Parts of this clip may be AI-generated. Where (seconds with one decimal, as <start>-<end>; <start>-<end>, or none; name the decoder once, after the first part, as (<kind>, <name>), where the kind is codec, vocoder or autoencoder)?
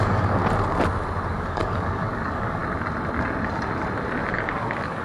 0.0-0.4 (codec, DAC); 1.3-2.6; 4.3-5.0